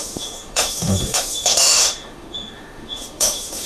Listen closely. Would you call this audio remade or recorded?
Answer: remade